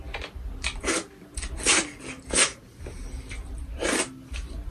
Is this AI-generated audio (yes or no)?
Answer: no